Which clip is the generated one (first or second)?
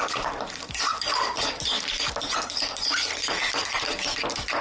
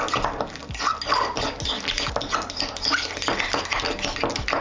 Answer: first